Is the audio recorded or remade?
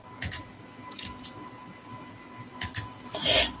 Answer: recorded